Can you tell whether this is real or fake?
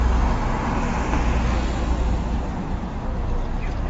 real